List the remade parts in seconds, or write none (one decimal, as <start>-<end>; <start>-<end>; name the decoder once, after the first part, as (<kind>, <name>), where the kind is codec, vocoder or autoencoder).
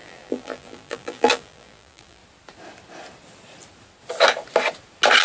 0.0-2.2 (vocoder, BigVGAN v2)